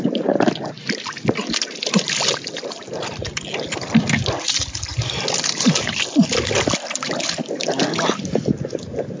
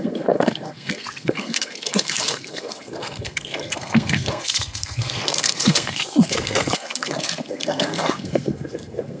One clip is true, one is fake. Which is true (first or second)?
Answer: first